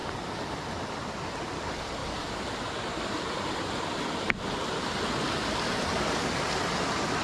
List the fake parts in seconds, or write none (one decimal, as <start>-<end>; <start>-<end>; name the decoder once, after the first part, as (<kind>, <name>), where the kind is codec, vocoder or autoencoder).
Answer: 2.0-4.8 (vocoder, BigVGAN v2)